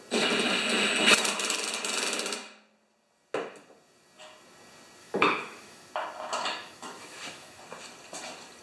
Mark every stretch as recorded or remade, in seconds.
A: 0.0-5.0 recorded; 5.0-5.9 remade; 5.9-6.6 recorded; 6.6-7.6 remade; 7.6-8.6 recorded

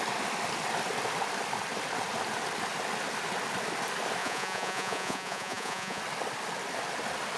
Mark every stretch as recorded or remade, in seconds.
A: 0.0-4.2 recorded; 4.2-6.0 remade; 6.0-7.4 recorded